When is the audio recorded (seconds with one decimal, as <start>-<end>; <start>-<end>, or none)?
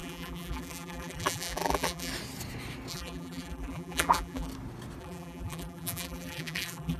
2.1-2.9; 4.5-5.0